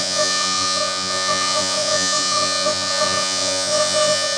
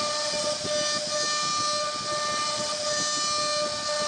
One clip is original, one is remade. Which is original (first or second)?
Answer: second